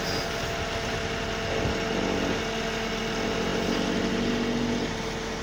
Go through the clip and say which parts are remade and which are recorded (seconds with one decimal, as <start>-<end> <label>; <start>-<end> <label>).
0.0-5.4 recorded